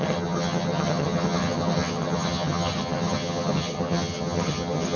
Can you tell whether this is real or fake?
fake